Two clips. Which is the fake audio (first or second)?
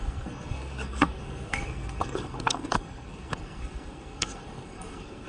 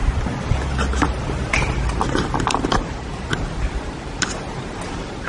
first